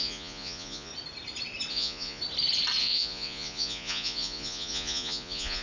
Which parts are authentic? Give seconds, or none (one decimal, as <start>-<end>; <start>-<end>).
0.9-1.7; 2.2-2.8